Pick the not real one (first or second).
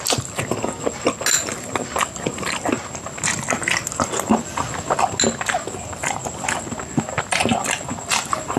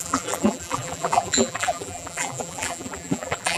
second